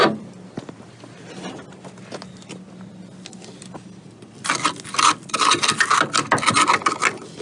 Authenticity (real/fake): real